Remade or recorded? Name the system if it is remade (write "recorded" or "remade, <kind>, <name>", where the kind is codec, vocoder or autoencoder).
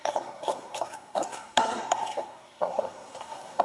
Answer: remade, codec, SNAC